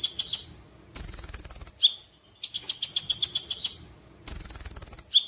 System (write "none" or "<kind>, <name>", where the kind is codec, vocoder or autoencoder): none